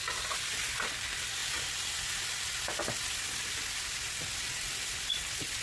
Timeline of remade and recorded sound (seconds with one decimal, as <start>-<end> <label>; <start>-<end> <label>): 0.0-5.6 recorded